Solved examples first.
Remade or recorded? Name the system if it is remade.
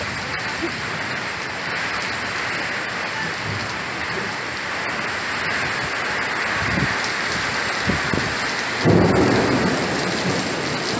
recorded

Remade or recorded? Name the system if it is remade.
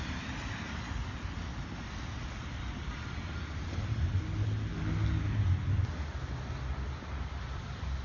recorded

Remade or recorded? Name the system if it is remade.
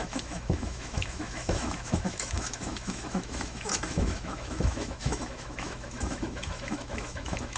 remade, autoencoder, DAC-VAE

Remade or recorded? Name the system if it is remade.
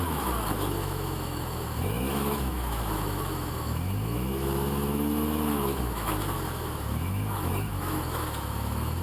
remade, autoencoder, DAC-VAE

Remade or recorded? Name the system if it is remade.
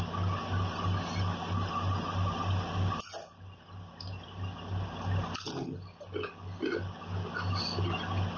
recorded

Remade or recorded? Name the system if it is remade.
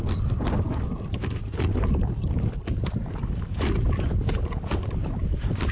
recorded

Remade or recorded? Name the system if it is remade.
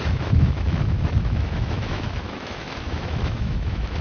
remade, autoencoder, DAC-VAE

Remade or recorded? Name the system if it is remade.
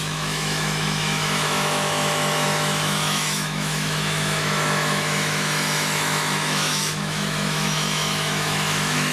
remade, autoencoder, DAC-VAE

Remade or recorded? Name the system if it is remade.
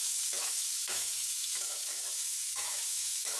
remade, autoencoder, DAC-VAE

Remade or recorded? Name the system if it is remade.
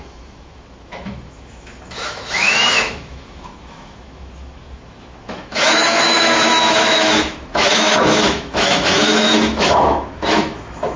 remade, autoencoder, DAC-VAE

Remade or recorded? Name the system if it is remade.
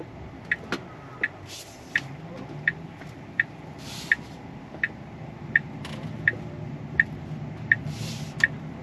recorded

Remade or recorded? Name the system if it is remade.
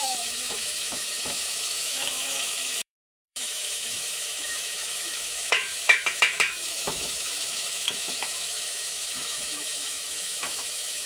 remade, autoencoder, DAC-VAE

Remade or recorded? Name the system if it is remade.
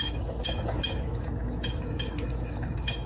remade, autoencoder, DAC-VAE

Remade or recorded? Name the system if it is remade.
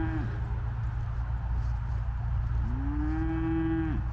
recorded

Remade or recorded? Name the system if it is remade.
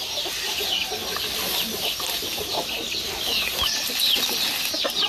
recorded